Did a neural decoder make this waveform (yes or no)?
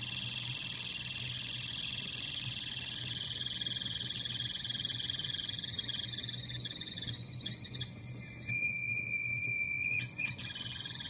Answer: yes